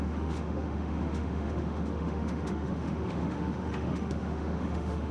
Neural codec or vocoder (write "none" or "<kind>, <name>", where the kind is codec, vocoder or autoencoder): autoencoder, DAC-VAE